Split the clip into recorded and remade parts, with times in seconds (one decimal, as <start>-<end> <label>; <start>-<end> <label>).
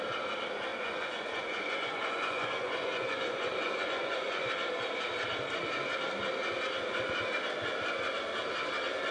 0.0-0.7 recorded; 0.7-4.5 remade; 4.5-9.1 recorded